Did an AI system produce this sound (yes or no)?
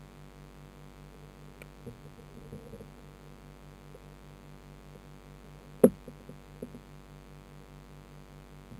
no